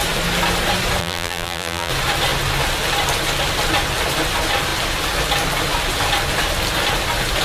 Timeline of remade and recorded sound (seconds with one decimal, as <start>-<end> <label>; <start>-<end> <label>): 0.0-1.0 recorded; 1.0-1.9 remade; 1.9-7.4 recorded